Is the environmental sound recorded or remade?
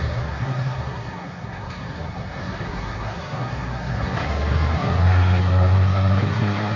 remade